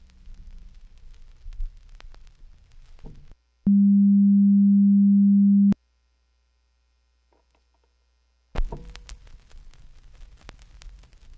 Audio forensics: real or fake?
real